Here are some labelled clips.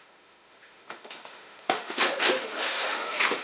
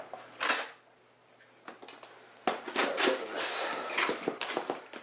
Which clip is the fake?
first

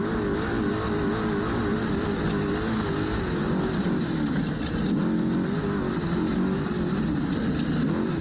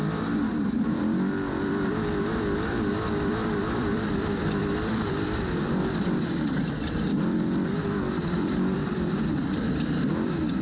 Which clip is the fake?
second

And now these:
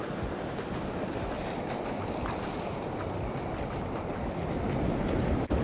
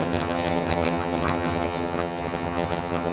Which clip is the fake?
second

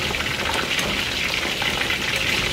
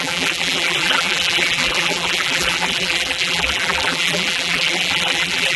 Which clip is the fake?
second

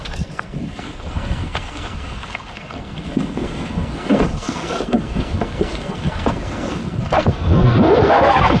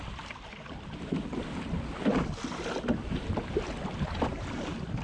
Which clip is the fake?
first